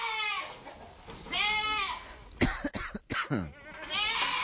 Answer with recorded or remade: recorded